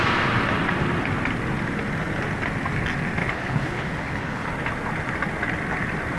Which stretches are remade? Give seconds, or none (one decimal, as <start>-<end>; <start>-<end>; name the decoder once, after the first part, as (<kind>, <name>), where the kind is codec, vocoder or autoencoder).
3.2-4.5 (codec, HILCodec)

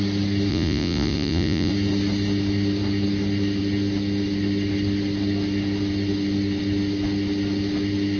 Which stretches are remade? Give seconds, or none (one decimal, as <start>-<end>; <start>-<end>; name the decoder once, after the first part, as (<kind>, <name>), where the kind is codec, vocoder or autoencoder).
0.5-1.7 (vocoder, Vocos)

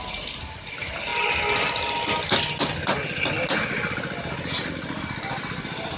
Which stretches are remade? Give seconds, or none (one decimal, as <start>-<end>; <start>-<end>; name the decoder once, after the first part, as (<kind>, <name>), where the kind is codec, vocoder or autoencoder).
none